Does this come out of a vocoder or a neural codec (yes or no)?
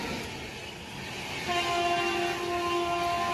no